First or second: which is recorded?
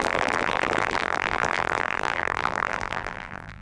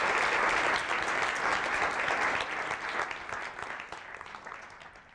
second